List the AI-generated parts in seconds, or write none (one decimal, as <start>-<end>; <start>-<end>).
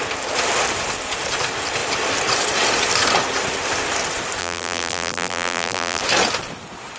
4.4-6.0